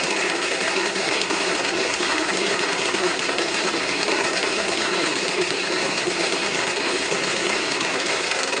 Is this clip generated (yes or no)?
yes